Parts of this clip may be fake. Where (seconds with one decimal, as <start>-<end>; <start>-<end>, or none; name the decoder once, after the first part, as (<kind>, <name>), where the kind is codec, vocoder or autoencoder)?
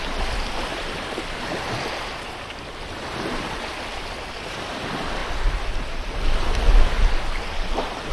none